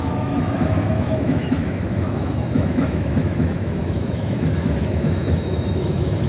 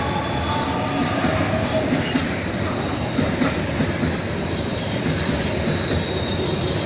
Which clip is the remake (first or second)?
first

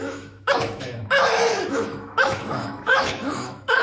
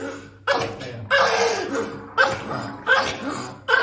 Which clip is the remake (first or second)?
first